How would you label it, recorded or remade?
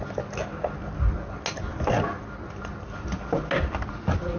recorded